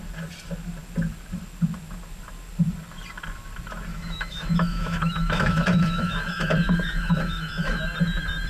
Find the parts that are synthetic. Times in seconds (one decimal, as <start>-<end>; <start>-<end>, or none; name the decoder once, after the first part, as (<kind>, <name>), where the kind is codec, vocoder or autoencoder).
3.9-7.8 (autoencoder, DAC-VAE)